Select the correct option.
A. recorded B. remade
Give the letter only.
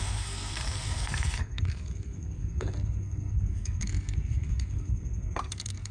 B